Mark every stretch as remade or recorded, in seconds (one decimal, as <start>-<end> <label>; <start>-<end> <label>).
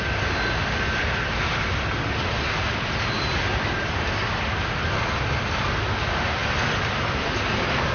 0.0-7.9 recorded